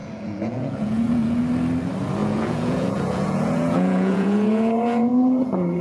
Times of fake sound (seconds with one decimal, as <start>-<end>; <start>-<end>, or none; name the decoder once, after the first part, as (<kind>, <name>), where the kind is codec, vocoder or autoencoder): 0.0-1.4 (vocoder, Vocos); 2.2-5.8